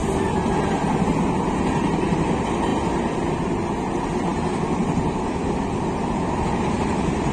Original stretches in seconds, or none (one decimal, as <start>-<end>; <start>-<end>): 0.0-7.3